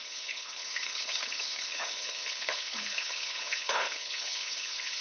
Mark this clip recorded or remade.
remade